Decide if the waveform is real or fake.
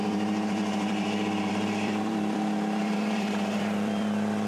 fake